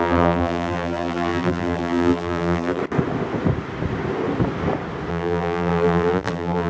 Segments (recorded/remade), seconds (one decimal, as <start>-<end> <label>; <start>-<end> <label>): 0.0-2.8 remade; 2.8-5.1 recorded; 5.1-6.7 remade